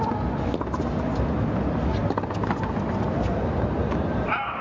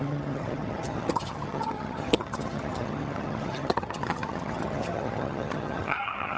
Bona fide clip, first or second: first